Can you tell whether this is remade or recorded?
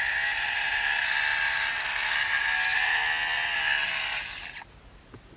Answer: recorded